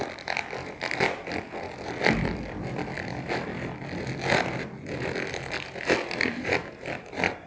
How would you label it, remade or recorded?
recorded